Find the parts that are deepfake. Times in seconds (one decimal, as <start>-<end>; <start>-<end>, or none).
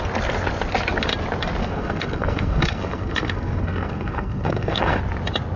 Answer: 1.6-5.0